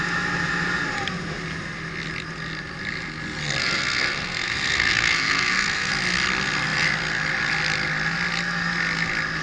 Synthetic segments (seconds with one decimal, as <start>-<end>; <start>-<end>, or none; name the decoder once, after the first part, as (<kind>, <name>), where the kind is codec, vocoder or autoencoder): 3.6-5.9 (codec, SNAC)